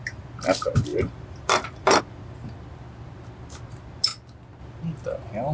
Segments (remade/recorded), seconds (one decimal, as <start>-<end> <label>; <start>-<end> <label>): 0.0-0.9 recorded; 0.9-2.0 remade; 2.0-5.5 recorded